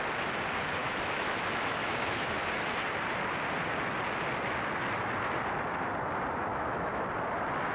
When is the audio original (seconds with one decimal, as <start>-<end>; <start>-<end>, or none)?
0.0-0.8; 1.3-1.8; 2.4-6.5; 7.0-7.7